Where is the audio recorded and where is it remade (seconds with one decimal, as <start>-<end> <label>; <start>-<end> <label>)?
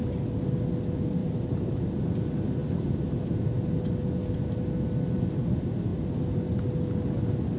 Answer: 0.0-1.2 recorded; 1.2-1.9 remade; 1.9-7.6 recorded